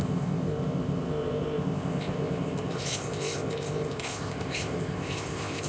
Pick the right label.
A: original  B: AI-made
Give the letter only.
B